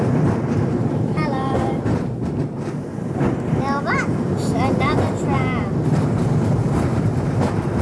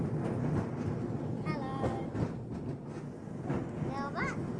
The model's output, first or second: first